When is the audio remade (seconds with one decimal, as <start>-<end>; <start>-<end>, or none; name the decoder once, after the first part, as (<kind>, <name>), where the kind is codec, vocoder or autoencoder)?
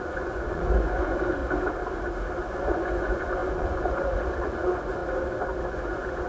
0.0-1.4 (vocoder, Vocos); 2.5-5.0; 5.6-6.3